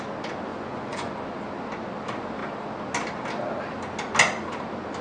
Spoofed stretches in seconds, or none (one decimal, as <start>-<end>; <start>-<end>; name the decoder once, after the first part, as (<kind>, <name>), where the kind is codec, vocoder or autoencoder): 0.5-1.1 (vocoder, Vocos)